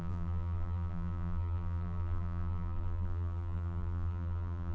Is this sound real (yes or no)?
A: no